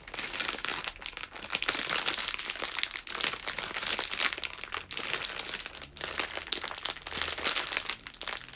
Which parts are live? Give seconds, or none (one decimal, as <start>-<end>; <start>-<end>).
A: 0.0-0.7; 3.9-8.6